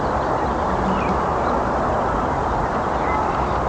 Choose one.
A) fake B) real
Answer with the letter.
B